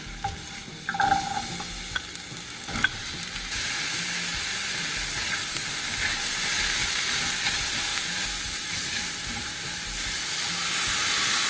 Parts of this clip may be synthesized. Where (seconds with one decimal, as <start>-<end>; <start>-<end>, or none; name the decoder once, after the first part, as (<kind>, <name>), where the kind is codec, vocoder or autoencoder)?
3.0-3.9 (vocoder, BigVGAN v2); 6.8-7.5; 7.9-9.5